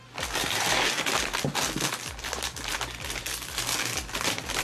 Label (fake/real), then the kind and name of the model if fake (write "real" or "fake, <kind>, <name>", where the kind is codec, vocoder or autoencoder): real